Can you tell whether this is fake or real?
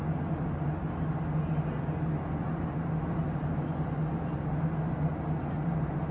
real